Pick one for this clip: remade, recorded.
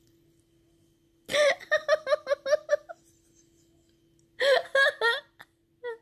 recorded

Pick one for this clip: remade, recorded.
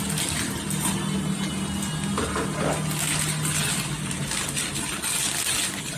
recorded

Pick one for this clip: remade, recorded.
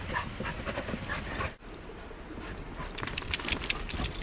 recorded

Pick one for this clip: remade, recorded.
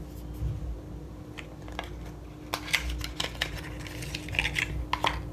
recorded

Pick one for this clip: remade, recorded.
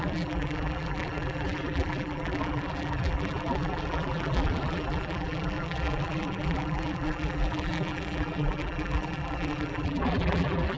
remade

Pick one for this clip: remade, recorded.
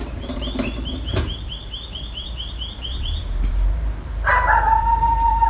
remade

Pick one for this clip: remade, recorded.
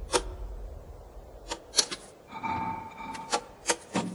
recorded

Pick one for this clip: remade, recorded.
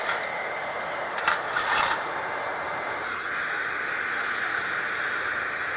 remade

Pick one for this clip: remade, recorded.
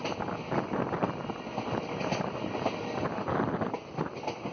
recorded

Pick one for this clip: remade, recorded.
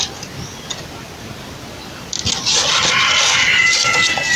recorded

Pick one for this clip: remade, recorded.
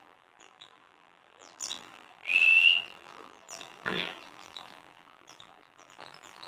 remade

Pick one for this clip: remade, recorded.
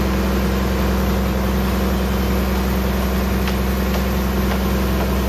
recorded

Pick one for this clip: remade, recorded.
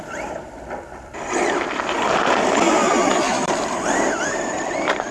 remade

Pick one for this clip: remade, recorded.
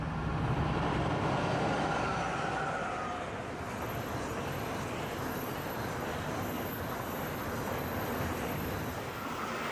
recorded